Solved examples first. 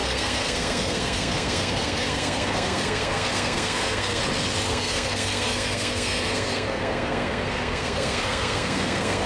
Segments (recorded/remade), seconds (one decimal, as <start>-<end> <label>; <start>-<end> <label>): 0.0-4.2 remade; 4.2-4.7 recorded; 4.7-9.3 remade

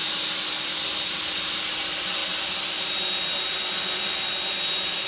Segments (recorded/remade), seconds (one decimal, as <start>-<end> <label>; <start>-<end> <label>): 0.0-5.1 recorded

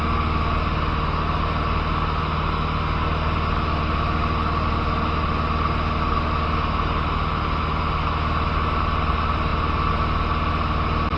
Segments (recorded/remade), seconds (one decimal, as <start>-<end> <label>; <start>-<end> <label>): 0.0-11.2 recorded

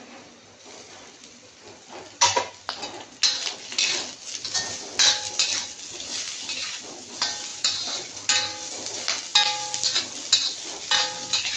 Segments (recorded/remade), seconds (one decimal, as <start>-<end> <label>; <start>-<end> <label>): 0.0-7.5 recorded; 7.5-8.1 remade; 8.1-11.6 recorded

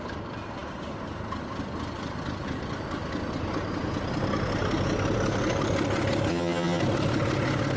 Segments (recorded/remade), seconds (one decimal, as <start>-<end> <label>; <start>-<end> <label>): 0.0-6.3 recorded; 6.3-6.8 remade; 6.8-7.8 recorded